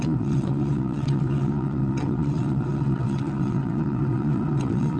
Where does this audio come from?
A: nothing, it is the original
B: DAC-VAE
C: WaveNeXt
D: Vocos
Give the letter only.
C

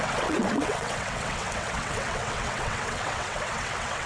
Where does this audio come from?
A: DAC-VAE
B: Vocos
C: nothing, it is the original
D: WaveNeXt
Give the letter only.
D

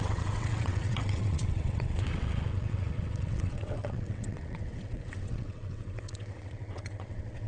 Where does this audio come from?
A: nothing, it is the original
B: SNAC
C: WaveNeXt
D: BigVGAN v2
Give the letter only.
C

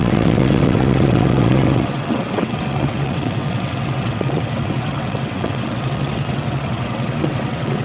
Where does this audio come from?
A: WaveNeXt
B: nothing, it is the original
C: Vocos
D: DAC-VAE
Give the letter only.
A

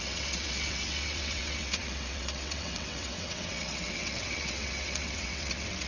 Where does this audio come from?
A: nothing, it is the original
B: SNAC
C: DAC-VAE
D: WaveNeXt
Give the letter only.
D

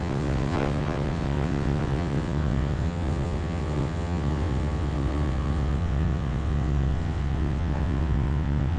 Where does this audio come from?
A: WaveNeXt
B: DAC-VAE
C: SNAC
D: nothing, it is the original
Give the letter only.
A